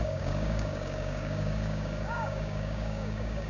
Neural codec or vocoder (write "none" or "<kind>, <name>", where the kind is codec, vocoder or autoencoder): codec, DAC